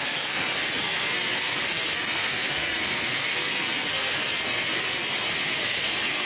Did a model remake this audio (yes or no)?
yes